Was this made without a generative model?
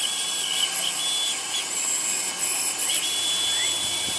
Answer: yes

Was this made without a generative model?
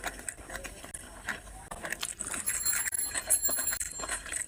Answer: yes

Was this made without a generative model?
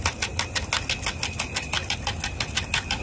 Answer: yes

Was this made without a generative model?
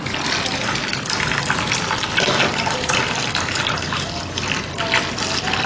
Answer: yes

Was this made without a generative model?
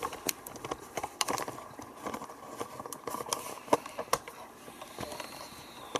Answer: yes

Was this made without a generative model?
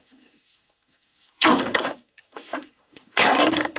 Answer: no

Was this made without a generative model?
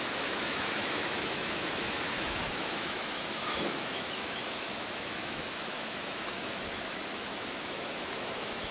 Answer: no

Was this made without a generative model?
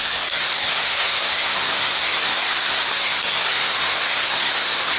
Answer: no